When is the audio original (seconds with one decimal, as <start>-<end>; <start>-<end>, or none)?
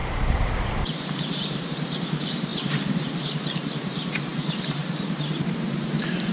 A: none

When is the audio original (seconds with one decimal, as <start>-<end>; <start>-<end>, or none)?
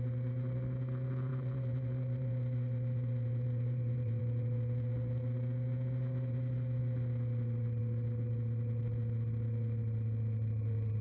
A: 0.0-1.3; 4.2-11.0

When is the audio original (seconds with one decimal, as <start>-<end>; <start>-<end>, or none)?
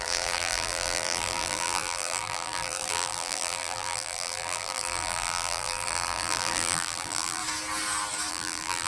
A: 7.4-8.3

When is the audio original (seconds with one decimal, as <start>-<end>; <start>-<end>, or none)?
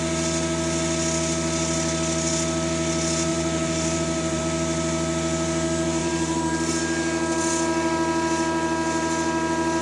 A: 0.0-3.3; 4.4-6.0; 6.7-9.8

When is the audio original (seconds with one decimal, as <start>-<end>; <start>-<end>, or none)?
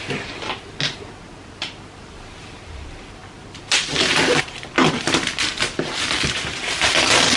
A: 0.0-3.2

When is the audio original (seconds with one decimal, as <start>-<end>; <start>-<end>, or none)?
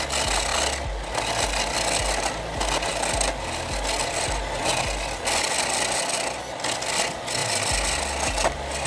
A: 0.0-8.9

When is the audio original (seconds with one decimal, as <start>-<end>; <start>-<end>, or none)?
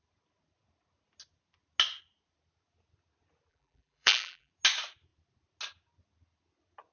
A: 0.0-3.5; 4.5-6.9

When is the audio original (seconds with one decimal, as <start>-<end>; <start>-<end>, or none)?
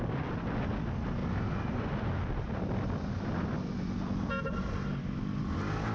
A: 0.0-1.2; 4.7-5.9